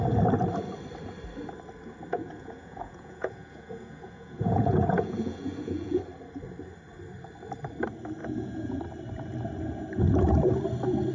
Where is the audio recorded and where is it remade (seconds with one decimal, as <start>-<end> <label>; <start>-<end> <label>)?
0.0-2.1 recorded; 2.1-6.0 remade; 6.0-8.2 recorded; 8.2-8.8 remade; 8.8-11.1 recorded